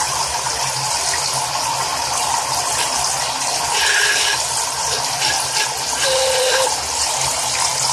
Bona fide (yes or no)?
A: yes